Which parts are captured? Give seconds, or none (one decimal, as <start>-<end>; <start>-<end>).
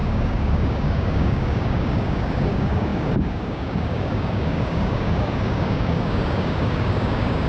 none